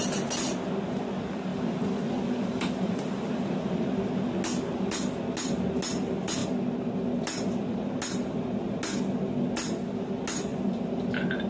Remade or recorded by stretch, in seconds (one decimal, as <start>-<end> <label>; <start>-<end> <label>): 0.0-1.5 recorded; 1.5-4.1 remade; 4.1-11.5 recorded